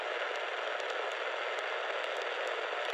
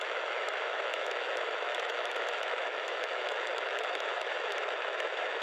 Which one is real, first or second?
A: first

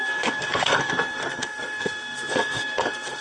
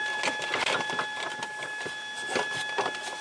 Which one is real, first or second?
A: second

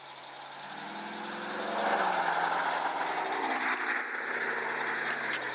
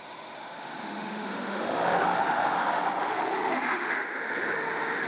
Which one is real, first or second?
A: first